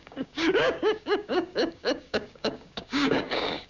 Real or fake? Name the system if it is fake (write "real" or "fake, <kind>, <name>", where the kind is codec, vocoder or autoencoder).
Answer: fake, codec, DAC